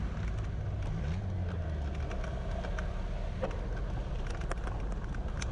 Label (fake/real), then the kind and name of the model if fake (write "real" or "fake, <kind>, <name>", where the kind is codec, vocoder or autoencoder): real